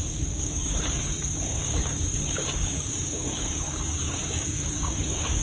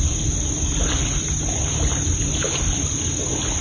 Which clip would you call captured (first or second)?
second